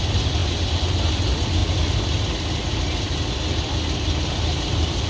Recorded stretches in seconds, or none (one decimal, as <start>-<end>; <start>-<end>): 0.0-5.1